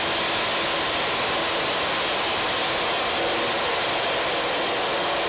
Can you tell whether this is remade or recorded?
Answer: recorded